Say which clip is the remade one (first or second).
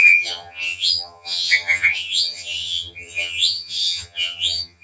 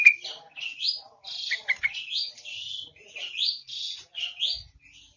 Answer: first